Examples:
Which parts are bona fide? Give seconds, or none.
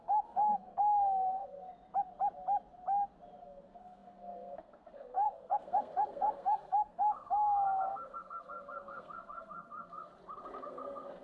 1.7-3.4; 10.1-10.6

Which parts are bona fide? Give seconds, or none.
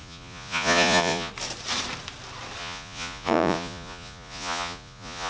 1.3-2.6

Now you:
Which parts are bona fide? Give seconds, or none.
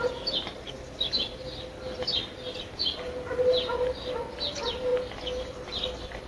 0.0-6.3